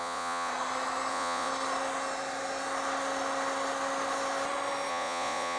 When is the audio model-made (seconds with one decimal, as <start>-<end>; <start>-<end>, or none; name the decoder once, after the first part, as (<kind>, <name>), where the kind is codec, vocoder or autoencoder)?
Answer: 0.0-0.5 (vocoder, Vocos); 1.1-1.5; 4.9-5.6